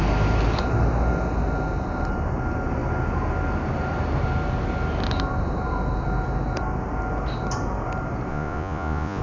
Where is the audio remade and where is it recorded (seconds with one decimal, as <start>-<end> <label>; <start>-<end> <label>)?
0.0-8.3 recorded; 8.3-9.2 remade